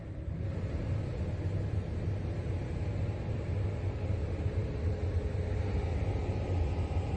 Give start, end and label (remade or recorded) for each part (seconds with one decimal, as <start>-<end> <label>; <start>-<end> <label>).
0.0-7.2 recorded